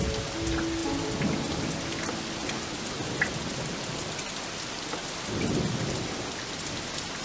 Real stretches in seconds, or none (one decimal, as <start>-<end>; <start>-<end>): 0.0-7.2